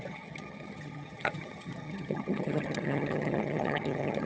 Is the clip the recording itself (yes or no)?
no